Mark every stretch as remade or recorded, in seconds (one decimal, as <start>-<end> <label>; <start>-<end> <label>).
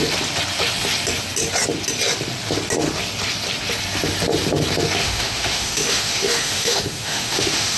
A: 0.0-5.0 recorded; 5.0-7.8 remade